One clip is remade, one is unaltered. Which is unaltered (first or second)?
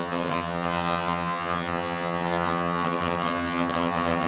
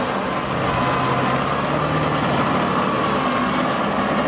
second